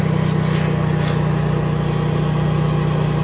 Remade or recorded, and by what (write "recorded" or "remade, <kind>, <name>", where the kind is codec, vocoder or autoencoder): recorded